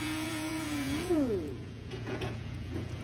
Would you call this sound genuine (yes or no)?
no